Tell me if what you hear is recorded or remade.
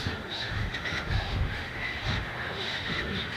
remade